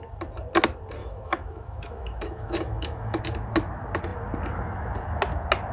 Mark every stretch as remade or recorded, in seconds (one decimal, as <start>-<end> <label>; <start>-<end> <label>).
0.0-1.0 recorded; 1.0-3.2 remade; 3.2-5.7 recorded